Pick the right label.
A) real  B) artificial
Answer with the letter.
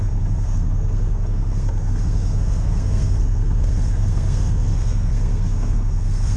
B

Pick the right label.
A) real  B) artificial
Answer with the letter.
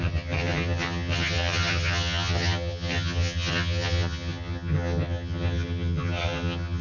B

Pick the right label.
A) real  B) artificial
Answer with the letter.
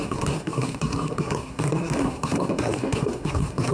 B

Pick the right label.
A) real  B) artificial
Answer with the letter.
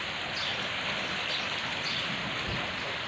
A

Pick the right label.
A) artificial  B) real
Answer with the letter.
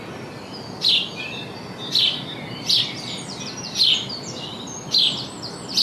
B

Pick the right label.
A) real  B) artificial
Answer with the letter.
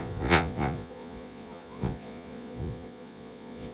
B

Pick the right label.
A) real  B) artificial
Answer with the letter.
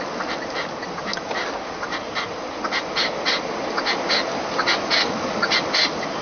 A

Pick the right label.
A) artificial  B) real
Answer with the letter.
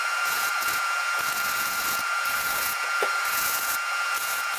A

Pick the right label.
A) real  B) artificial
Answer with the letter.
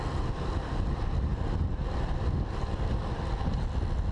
A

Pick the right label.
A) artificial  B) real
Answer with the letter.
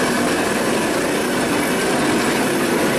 B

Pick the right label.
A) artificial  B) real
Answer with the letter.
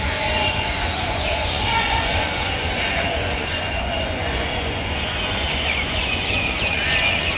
A